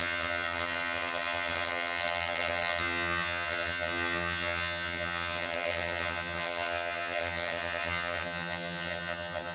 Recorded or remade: remade